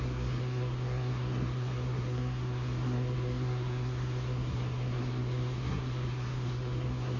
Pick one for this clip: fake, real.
fake